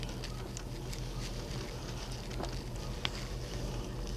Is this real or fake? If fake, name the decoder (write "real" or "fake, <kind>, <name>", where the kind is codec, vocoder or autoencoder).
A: real